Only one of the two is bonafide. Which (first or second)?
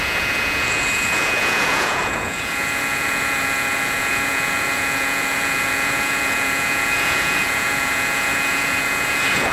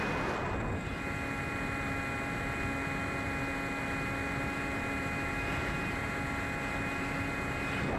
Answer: second